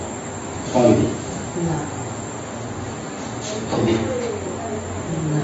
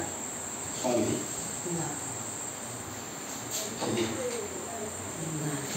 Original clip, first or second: first